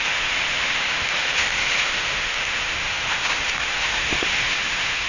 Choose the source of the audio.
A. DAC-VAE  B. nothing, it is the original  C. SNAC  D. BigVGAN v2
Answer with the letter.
A